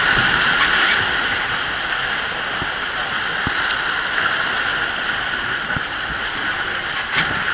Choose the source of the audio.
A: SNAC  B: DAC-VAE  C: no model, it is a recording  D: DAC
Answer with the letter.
C